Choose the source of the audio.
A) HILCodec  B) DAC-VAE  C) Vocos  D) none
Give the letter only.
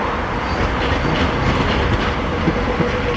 D